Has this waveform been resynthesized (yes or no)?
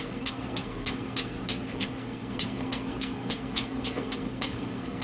yes